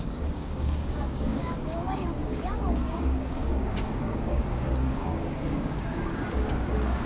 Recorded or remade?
remade